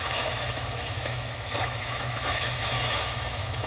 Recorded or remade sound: remade